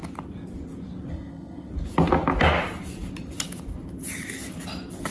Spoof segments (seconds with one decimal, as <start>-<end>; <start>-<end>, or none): 1.1-1.7